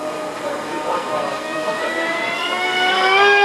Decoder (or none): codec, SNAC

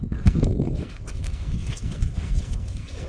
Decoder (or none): codec, SNAC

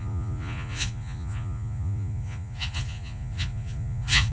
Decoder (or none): vocoder, Vocos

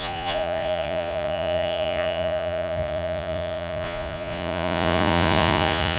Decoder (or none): vocoder, Vocos